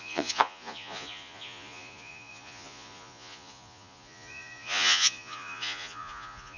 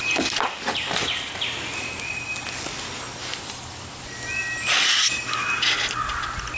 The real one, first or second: second